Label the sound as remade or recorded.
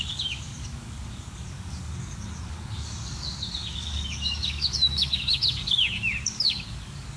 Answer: remade